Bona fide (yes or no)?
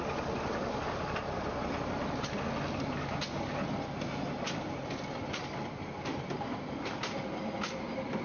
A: yes